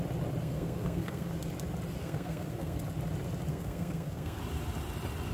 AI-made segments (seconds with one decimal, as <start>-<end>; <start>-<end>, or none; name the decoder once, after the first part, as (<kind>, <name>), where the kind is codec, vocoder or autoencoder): 0.4-1.3 (codec, SNAC); 2.0-2.8; 3.5-4.4